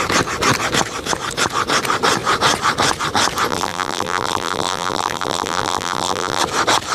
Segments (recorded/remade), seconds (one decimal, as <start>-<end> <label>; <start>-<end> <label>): 0.0-3.5 recorded; 3.5-6.4 remade; 6.4-6.9 recorded